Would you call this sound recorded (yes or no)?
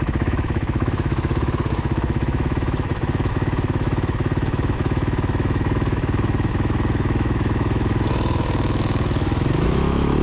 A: no